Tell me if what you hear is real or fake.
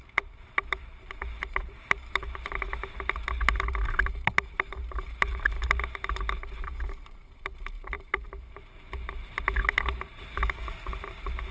fake